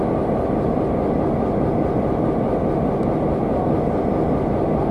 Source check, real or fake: real